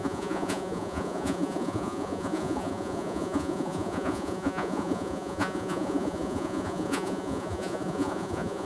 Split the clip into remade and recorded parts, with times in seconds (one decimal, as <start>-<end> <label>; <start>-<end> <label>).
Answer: 0.0-8.7 remade